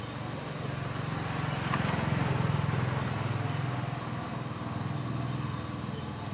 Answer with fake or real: real